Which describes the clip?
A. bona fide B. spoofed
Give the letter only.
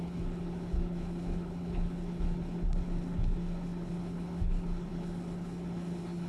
B